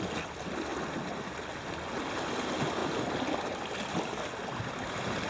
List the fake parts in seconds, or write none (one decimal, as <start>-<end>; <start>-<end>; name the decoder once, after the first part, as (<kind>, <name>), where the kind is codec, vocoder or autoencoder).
none

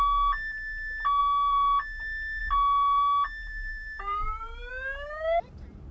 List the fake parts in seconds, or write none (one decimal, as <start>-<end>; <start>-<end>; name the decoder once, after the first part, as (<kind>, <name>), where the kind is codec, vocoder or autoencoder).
3.7-4.7 (vocoder, BigVGAN v2)